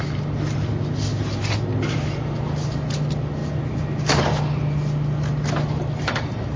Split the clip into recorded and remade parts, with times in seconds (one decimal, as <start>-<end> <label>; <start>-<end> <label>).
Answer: 0.0-6.6 recorded